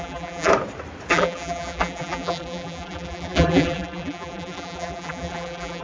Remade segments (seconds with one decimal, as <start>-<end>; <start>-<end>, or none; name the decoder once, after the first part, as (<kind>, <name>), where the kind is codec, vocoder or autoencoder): 0.0-0.5 (vocoder, BigVGAN v2); 1.1-5.8